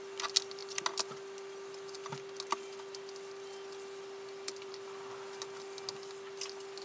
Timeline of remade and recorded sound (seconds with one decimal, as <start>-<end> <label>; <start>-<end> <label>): 0.0-6.8 recorded